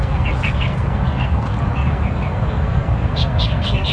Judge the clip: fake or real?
fake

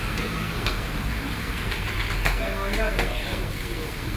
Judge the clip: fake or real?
fake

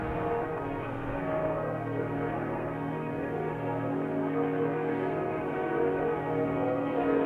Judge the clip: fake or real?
fake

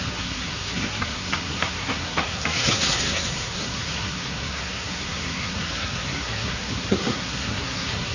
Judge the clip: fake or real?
fake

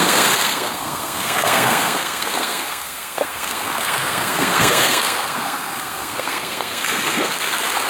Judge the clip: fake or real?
fake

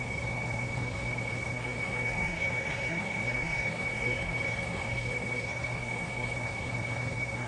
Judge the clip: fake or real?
fake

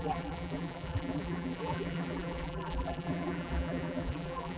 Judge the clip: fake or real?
fake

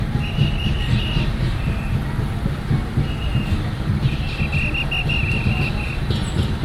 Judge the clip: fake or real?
real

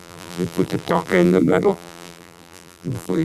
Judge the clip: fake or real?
fake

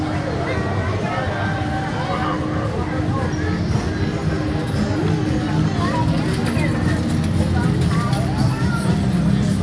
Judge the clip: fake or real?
real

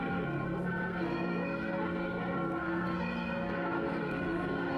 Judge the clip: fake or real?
fake